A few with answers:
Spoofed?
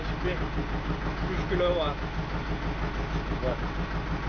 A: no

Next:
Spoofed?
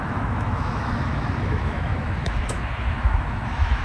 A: yes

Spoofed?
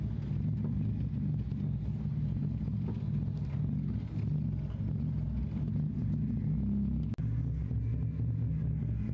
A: no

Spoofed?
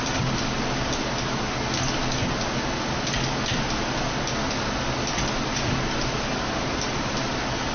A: no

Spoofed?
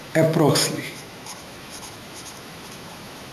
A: yes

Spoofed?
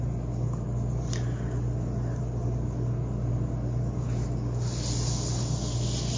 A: no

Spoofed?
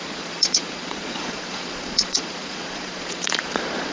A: yes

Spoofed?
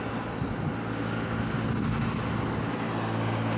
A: no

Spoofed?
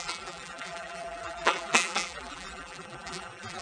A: yes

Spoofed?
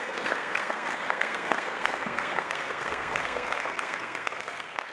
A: yes